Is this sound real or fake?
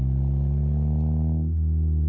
real